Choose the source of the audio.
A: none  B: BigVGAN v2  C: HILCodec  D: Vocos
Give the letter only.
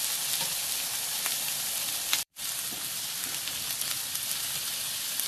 B